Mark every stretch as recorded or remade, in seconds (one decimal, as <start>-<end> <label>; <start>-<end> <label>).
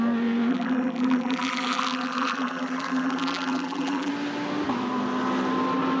0.0-0.5 recorded; 0.5-4.1 remade; 4.1-6.0 recorded